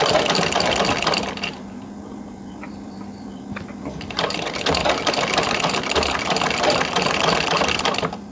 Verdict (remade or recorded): remade